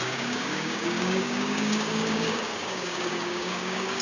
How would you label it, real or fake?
fake